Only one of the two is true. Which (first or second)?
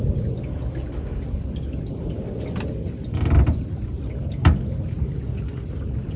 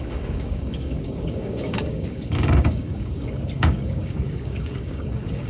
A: first